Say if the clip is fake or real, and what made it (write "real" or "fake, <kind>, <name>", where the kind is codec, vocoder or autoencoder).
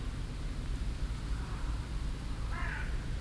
real